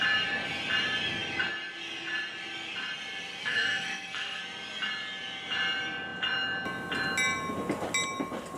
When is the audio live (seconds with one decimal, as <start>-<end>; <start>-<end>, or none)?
0.0-3.4; 4.4-8.6